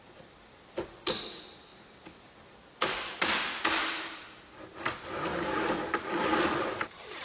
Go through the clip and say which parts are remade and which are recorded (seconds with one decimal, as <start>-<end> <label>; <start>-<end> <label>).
0.0-7.2 recorded